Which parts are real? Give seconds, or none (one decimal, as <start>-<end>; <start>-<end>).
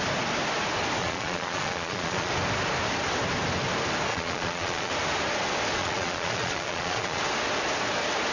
0.0-1.0; 2.3-4.1; 4.9-5.8; 7.2-8.3